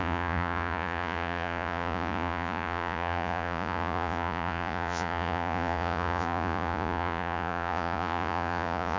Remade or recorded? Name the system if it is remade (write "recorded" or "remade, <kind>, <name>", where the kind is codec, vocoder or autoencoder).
remade, vocoder, Vocos